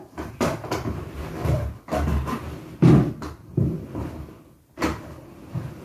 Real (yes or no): yes